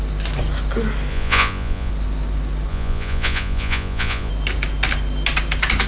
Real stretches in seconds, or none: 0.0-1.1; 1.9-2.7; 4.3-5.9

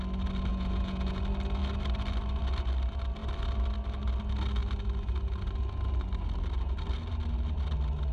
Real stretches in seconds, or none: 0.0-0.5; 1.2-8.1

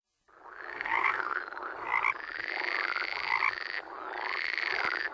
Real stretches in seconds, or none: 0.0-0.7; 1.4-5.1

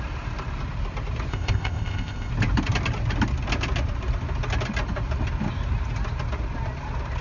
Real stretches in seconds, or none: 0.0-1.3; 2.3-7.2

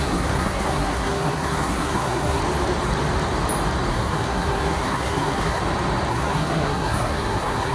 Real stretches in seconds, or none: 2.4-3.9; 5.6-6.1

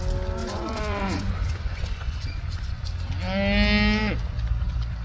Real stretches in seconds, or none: 0.0-0.4; 2.8-5.0

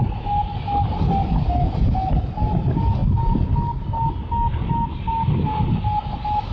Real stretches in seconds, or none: 0.0-6.5

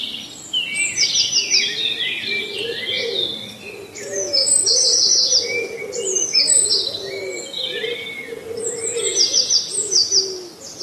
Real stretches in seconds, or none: 0.0-10.8